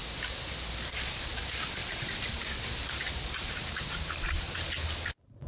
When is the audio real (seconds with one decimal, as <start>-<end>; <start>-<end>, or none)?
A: 0.0-1.8; 5.1-5.5